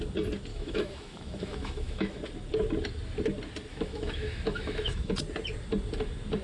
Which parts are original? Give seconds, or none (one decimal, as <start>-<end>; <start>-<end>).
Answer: 0.0-0.5; 2.2-3.7; 5.1-6.4